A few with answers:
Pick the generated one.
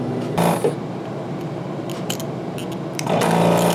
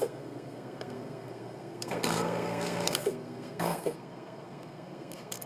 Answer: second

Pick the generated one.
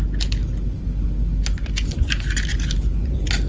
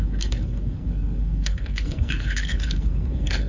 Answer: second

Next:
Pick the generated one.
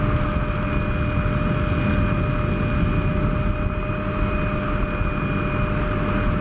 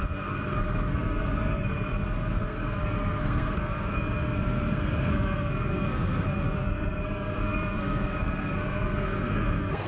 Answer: second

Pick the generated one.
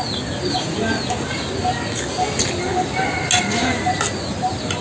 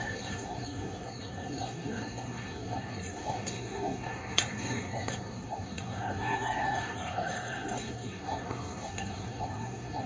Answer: second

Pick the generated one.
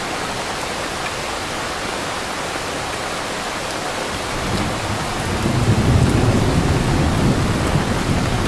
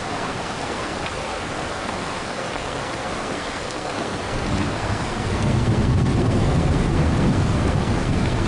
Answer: second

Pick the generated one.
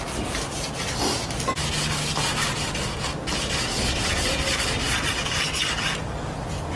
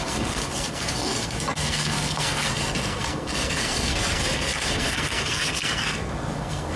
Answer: second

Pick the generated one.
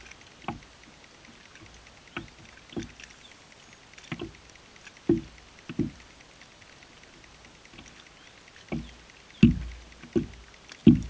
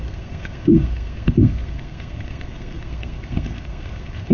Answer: second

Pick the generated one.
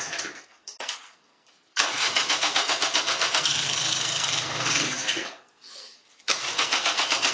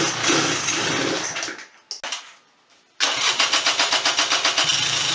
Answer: first